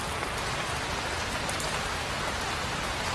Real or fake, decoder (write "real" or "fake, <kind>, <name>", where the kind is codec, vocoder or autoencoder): real